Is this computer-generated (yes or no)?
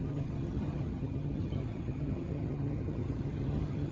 yes